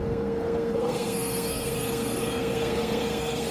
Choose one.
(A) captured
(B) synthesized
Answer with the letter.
B